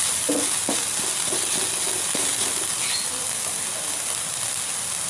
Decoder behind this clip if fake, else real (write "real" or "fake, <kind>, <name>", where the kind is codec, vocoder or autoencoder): real